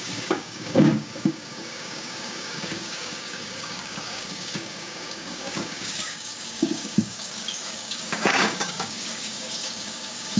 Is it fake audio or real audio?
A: fake